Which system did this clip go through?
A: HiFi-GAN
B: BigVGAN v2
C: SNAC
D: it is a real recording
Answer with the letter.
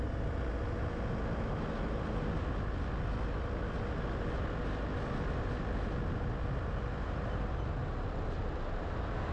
D